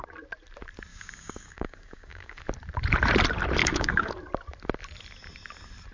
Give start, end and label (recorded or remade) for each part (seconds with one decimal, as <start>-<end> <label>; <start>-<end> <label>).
0.0-0.9 recorded; 0.9-2.4 remade; 2.4-3.6 recorded; 3.6-4.1 remade; 4.1-5.9 recorded